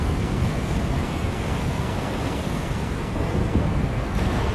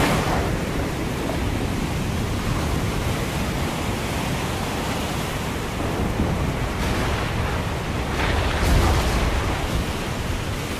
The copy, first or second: first